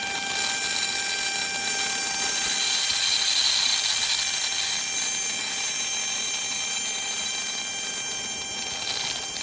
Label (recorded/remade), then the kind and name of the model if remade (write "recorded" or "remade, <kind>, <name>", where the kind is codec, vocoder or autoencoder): recorded